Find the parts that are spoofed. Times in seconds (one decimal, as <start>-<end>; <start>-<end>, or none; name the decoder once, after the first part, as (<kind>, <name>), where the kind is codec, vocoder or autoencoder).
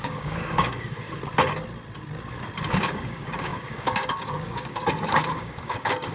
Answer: 0.0-1.2 (codec, DAC); 2.7-6.1